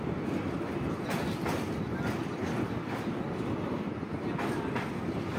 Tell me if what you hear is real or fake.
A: real